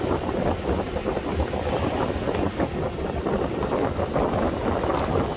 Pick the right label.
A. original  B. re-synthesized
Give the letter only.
A